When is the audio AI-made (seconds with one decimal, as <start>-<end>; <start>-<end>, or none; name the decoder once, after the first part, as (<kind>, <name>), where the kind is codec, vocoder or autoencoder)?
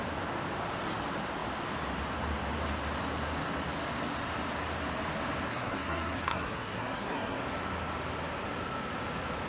5.5-7.4 (codec, SNAC)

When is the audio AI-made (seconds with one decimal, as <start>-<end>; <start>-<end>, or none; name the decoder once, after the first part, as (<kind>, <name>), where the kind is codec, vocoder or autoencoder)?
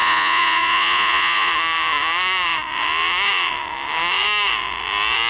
0.0-1.5 (vocoder, Vocos)